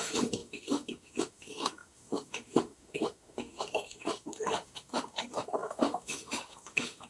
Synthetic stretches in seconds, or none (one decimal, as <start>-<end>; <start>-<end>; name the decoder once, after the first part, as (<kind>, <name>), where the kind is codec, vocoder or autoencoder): 0.0-7.1 (autoencoder, DAC-VAE)